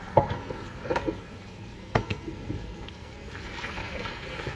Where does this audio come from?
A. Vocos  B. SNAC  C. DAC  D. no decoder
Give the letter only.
B